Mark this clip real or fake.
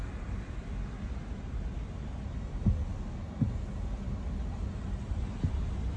real